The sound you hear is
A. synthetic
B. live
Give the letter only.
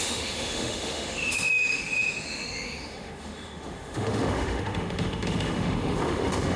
A